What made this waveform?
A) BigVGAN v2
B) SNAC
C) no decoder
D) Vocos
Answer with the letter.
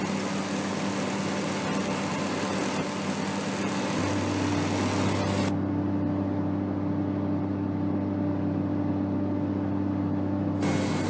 C